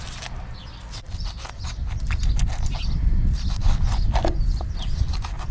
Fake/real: real